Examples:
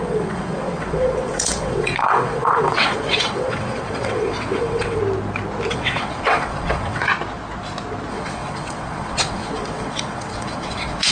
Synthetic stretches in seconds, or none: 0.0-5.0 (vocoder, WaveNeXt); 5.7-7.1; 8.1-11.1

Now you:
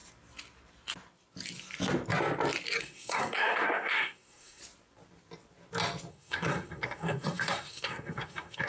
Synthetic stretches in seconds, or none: 2.8-4.6 (codec, SNAC); 6.1-8.7

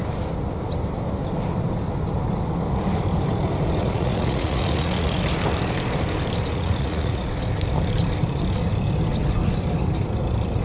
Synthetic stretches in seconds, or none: 3.8-5.2 (vocoder, Vocos); 6.5-7.3

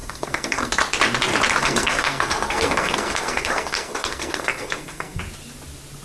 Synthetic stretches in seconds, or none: 0.0-0.7 (codec, SNAC); 1.6-5.2

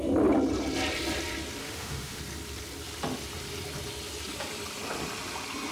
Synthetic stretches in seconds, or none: 1.6-2.2 (autoencoder, DAC-VAE)